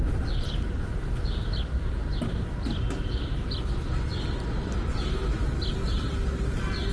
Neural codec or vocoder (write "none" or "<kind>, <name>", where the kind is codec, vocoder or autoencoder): none